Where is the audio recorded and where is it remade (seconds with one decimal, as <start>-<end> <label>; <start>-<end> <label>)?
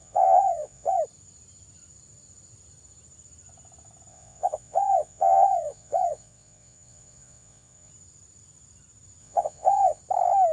0.0-1.0 remade; 1.0-4.1 recorded; 4.1-7.9 remade; 7.9-9.2 recorded; 9.2-10.0 remade; 10.0-10.5 recorded